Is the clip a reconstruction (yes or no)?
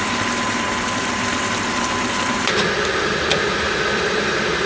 yes